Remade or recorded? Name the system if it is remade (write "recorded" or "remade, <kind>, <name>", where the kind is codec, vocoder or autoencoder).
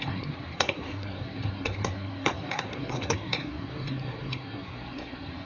remade, codec, SNAC